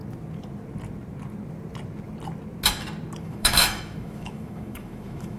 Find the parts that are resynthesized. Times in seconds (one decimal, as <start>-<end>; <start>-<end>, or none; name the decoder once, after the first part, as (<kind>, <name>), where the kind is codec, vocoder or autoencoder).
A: 3.2-5.4 (autoencoder, DAC-VAE)